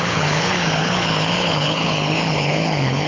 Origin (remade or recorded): remade